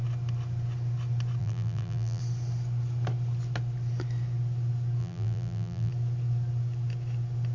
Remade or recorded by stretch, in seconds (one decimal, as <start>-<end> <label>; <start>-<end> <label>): 0.0-1.4 recorded; 1.4-2.2 remade; 2.2-5.0 recorded; 5.0-5.9 remade; 5.9-7.5 recorded